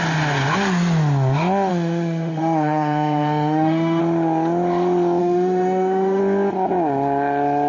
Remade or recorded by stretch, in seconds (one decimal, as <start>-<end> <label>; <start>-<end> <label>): 0.0-1.7 recorded; 1.7-4.0 remade; 4.0-5.2 recorded; 5.2-6.2 remade; 6.2-7.7 recorded